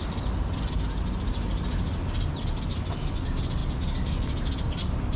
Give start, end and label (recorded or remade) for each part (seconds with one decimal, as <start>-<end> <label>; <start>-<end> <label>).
0.0-5.2 recorded

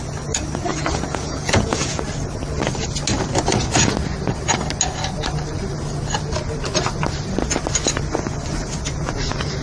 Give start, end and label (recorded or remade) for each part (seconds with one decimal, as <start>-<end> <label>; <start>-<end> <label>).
0.0-0.7 recorded; 0.7-2.0 remade; 2.0-9.6 recorded

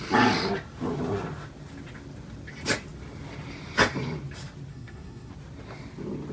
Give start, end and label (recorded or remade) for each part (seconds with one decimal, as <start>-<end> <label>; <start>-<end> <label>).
0.0-4.7 recorded; 4.7-5.3 remade; 5.3-6.3 recorded

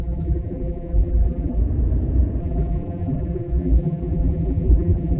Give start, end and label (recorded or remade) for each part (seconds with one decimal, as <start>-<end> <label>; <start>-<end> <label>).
0.0-1.6 remade; 1.6-2.4 recorded; 2.4-5.2 remade

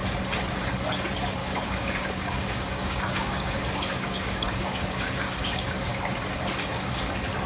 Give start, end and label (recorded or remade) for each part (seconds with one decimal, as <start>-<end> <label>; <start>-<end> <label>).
0.0-1.4 recorded; 1.4-5.9 remade; 5.9-7.5 recorded